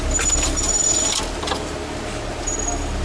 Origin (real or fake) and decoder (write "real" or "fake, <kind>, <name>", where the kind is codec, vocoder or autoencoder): real